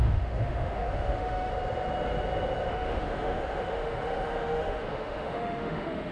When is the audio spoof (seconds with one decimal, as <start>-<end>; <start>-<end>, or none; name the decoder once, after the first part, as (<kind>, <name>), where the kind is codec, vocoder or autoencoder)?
0.0-1.5 (autoencoder, DAC-VAE); 2.7-6.1